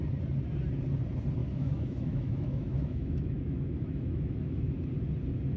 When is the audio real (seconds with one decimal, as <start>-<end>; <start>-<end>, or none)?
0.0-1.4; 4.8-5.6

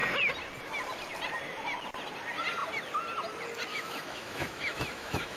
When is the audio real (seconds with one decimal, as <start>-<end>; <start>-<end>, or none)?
0.0-3.7

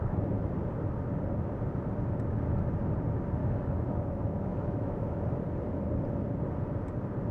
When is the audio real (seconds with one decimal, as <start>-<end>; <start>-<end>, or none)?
0.0-3.4; 5.2-7.3